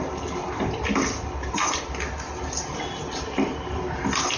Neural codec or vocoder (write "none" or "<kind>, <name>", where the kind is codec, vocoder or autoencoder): none